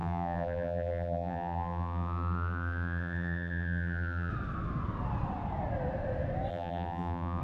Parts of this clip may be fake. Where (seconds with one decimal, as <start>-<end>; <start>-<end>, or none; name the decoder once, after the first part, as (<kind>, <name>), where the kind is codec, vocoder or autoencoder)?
0.0-4.3 (vocoder, BigVGAN v2); 6.5-7.4